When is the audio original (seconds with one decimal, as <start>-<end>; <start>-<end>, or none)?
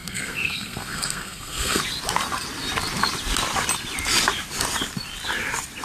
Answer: 1.8-5.8